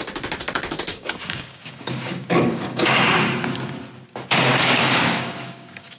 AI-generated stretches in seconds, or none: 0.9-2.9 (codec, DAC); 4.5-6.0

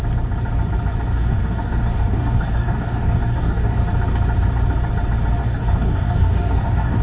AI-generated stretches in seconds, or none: 1.1-3.8 (codec, DAC); 5.4-7.0

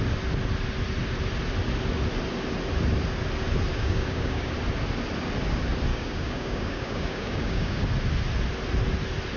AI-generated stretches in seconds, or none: 3.7-4.5 (codec, DAC); 5.9-7.8

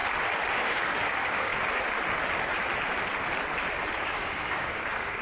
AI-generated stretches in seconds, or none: 0.5-1.5 (codec, DAC); 4.0-5.2

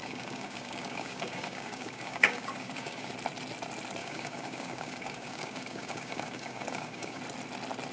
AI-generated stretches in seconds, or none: 0.0-3.1 (codec, DAC); 4.0-7.2

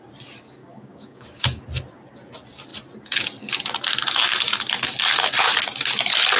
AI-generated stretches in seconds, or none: 0.6-1.6 (codec, DAC)

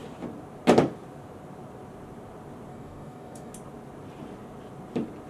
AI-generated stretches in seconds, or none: 2.7-3.5 (codec, DAC)

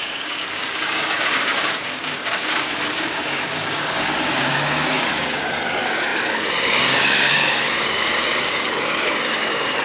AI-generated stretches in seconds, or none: 0.0-9.8 (codec, DAC)